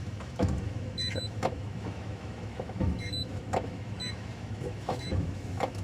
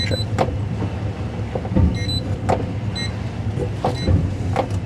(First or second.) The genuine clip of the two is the second